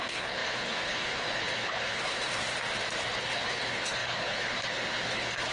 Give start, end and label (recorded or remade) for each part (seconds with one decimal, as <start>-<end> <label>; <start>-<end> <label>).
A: 0.0-2.4 remade; 2.4-3.2 recorded; 3.2-5.5 remade